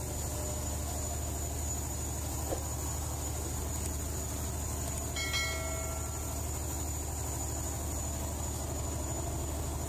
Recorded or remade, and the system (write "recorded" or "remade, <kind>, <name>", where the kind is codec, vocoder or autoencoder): recorded